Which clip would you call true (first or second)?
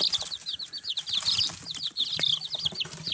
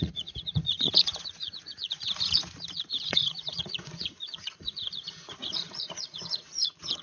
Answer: first